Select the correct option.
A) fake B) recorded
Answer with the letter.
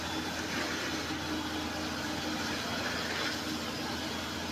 B